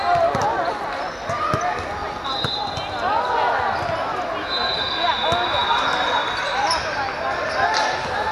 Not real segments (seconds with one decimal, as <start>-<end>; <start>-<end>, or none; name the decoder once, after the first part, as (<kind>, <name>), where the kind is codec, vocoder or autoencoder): 2.0-2.6 (vocoder, BigVGAN v2)